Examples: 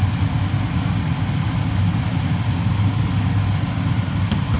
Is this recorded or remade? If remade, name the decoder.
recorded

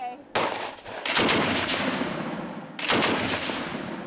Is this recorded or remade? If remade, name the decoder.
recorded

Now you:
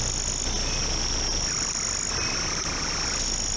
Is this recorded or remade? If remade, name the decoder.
recorded